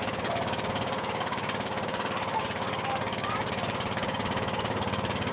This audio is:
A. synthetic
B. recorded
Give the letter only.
A